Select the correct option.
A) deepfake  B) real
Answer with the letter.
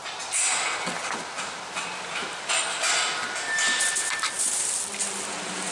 B